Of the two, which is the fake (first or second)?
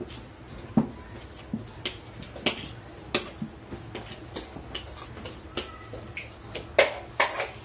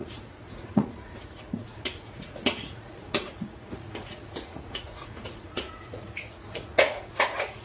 second